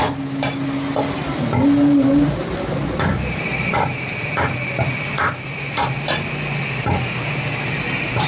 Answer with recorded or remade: recorded